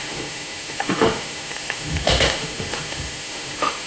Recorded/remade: remade